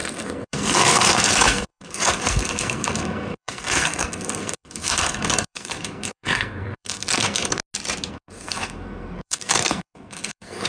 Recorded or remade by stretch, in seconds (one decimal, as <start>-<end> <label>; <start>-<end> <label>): 0.0-7.6 remade; 7.6-8.1 recorded; 8.1-10.7 remade